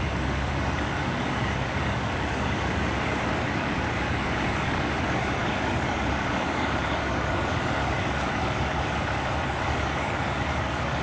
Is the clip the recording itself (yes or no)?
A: no